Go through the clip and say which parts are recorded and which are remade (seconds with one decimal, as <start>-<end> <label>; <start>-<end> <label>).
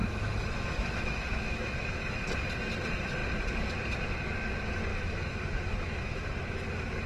0.0-2.2 remade; 2.2-4.9 recorded; 4.9-6.2 remade; 6.2-7.1 recorded